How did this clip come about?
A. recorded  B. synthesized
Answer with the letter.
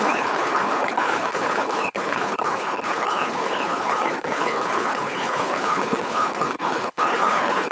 B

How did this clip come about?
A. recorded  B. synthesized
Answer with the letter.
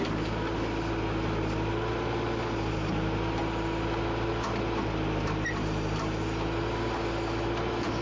A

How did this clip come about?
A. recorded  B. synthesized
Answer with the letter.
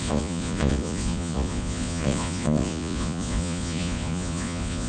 B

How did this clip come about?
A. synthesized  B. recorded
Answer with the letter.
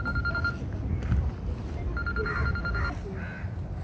B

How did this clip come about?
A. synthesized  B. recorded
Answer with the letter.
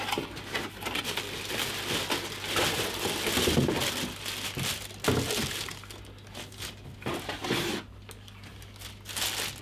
B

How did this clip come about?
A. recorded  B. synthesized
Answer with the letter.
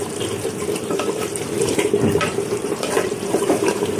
B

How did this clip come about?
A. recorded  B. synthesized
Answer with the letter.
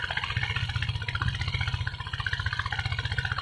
A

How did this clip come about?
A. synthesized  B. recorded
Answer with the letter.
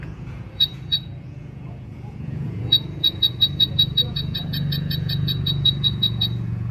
A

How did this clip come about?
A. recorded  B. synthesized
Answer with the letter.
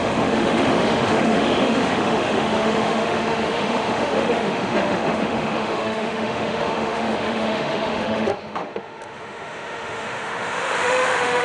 B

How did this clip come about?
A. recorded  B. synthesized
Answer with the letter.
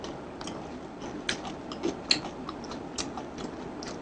A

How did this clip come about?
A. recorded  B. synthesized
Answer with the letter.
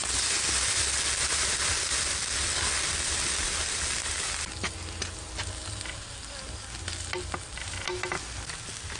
A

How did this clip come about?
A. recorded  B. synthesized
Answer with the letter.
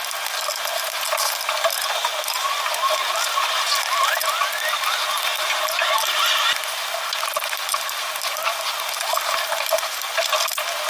A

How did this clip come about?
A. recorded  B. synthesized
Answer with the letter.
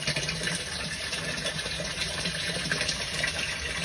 B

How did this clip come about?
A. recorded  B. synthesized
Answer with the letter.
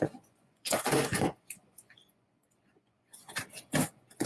B